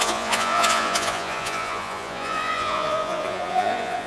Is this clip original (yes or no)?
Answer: no